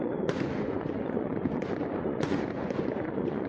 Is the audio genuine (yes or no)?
no